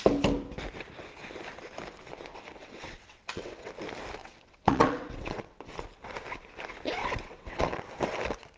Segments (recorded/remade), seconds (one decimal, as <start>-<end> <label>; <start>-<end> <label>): 0.0-2.3 recorded; 2.3-3.7 remade; 3.7-4.2 recorded; 4.2-5.7 remade; 5.7-7.0 recorded; 7.0-7.8 remade; 7.8-8.6 recorded